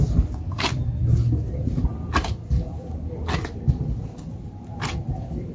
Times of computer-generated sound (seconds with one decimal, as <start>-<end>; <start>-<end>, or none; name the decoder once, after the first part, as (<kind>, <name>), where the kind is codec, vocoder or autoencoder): none